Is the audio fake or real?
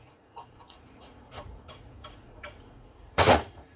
fake